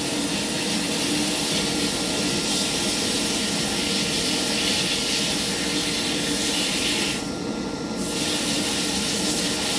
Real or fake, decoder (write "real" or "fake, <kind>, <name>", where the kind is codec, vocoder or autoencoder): real